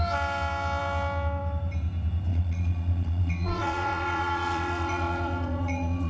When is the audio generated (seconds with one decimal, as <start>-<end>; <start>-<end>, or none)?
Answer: 2.3-6.1